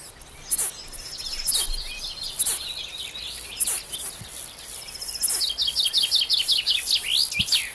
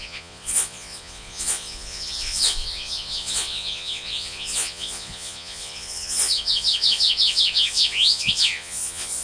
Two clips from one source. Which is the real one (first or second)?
first